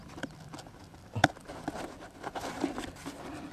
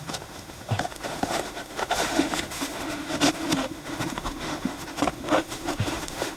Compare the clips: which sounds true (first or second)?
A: first